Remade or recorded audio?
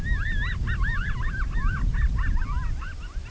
recorded